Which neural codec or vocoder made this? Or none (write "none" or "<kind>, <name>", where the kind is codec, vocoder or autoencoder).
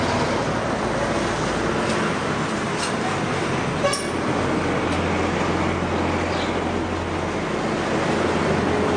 none